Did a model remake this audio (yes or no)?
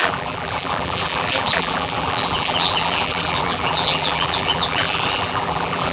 yes